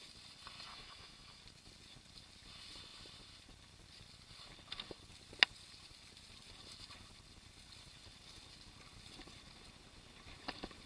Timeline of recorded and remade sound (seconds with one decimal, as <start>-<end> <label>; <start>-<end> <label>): 0.0-0.7 recorded; 0.7-1.4 remade; 1.4-10.9 recorded